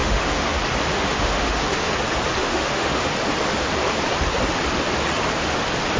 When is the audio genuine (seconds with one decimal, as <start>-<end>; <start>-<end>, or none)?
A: 0.5-0.9; 1.9-2.4; 3.2-6.0